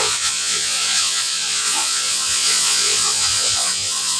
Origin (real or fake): fake